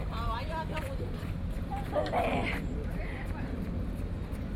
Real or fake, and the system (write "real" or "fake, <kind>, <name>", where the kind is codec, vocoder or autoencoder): real